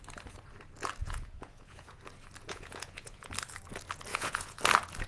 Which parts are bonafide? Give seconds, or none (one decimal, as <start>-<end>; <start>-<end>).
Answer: 0.0-1.0; 2.0-2.5; 3.3-4.1; 4.6-5.1

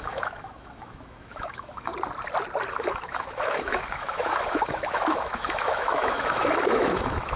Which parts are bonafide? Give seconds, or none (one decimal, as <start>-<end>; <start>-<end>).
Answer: 1.9-2.7

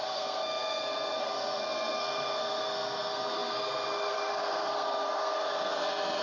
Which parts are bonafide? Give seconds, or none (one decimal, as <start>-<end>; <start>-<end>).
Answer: none